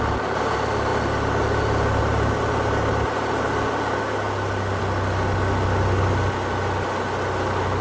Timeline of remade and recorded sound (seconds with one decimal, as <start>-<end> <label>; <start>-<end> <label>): 0.0-7.8 recorded